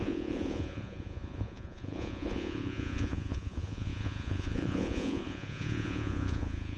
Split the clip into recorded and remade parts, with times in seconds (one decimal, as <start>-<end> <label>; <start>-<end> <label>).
0.0-6.8 remade